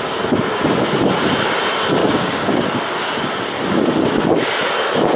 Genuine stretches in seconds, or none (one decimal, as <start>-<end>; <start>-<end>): 0.0-2.0; 2.8-5.2